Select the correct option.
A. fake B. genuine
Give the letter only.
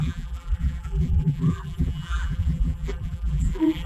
A